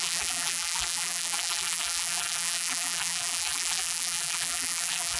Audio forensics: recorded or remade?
remade